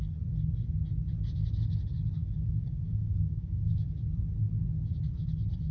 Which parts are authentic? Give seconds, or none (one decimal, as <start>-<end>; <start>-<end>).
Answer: 0.0-2.2; 3.9-5.7